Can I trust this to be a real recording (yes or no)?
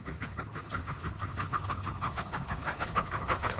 no